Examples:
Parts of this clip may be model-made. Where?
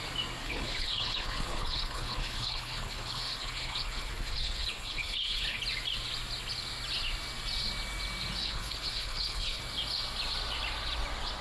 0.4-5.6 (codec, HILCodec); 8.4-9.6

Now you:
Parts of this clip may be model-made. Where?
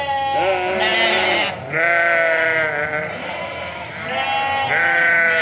none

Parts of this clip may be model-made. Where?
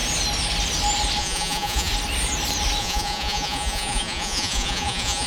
1.2-1.9 (vocoder, Vocos); 2.8-5.3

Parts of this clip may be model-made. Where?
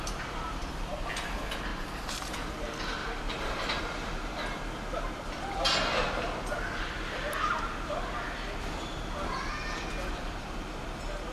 0.6-1.1 (vocoder, BigVGAN v2); 1.7-2.3; 3.0-3.8